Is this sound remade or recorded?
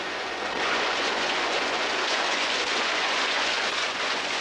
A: remade